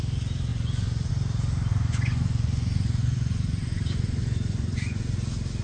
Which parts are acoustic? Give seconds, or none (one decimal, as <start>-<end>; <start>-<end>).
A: 0.0-0.5; 1.1-1.7; 5.1-5.6